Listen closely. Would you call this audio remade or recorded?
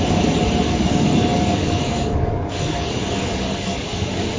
remade